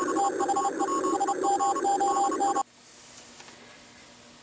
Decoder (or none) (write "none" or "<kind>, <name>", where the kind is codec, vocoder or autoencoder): none